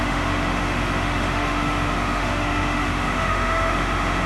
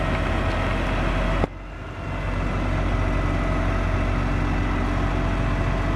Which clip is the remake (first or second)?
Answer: first